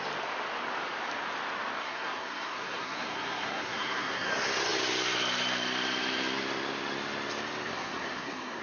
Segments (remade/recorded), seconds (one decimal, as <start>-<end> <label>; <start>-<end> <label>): 0.0-1.8 recorded; 1.8-4.3 remade; 4.3-7.7 recorded; 7.7-8.6 remade